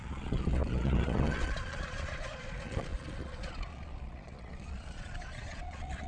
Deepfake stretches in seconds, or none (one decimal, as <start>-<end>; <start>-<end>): 0.0-6.1